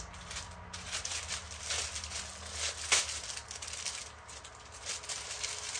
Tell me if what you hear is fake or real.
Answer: real